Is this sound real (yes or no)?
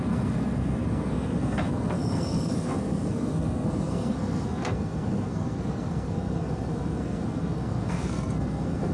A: no